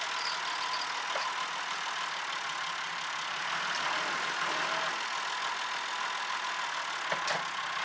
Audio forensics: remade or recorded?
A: recorded